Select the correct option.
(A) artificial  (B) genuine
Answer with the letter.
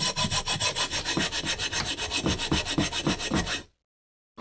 B